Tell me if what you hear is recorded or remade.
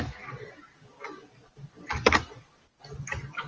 recorded